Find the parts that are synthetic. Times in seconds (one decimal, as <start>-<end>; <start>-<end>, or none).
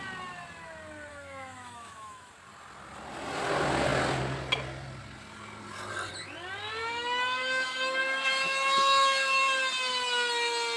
1.1-2.3; 6.8-9.4